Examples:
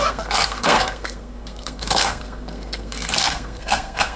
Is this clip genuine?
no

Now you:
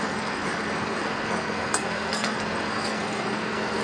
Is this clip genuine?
no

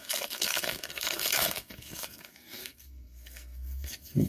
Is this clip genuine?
no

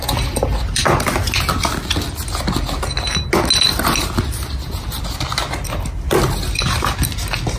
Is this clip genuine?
yes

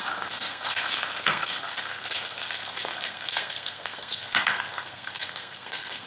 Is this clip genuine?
no